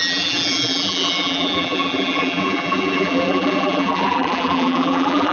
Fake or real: fake